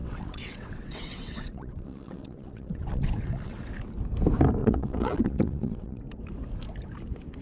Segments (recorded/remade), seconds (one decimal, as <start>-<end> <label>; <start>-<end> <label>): 0.0-3.6 remade; 3.6-4.6 recorded; 4.6-6.0 remade; 6.0-7.4 recorded